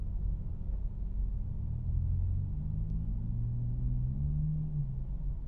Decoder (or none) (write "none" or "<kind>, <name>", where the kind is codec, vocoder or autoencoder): none